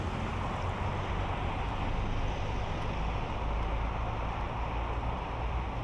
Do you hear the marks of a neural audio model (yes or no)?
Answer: no